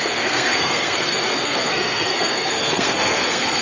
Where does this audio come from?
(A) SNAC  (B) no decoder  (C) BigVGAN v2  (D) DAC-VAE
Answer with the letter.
A